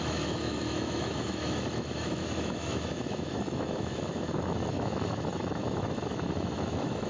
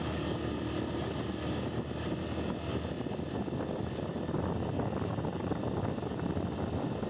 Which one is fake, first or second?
first